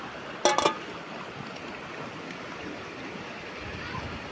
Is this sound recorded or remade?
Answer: recorded